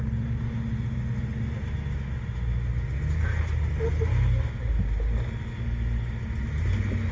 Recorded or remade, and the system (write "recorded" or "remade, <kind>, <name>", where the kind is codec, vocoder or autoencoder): recorded